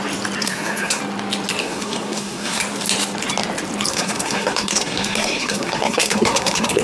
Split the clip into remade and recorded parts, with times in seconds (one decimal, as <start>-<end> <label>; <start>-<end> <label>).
0.0-0.4 recorded; 0.4-1.0 remade; 1.0-1.6 recorded; 1.6-2.6 remade; 2.6-3.9 recorded; 3.9-6.8 remade